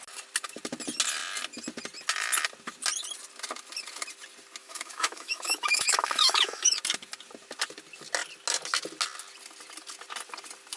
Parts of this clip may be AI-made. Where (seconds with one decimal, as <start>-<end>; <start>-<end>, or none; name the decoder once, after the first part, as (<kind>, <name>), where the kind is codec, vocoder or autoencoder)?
4.6-6.8 (autoencoder, DAC-VAE)